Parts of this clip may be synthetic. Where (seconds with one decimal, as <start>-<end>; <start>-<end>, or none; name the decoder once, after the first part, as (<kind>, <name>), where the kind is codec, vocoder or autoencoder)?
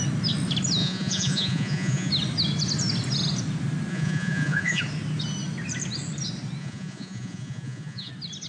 0.8-2.1 (vocoder, Vocos); 3.9-4.8; 6.6-8.1